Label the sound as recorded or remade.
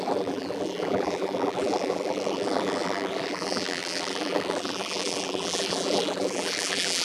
remade